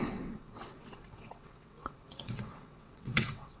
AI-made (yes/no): yes